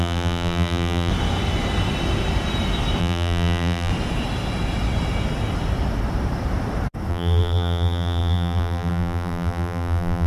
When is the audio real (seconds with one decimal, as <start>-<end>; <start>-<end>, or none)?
1.1-3.0; 3.9-7.1